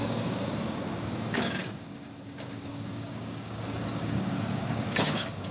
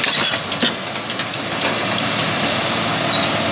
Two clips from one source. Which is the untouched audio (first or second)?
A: second